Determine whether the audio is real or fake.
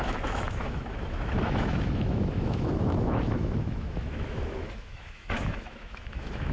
fake